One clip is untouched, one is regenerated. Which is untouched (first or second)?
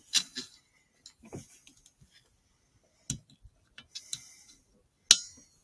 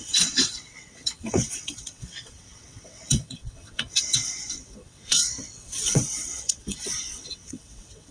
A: first